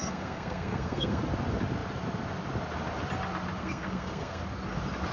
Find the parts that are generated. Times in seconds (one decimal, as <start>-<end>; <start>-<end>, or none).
0.0-1.2; 3.6-4.4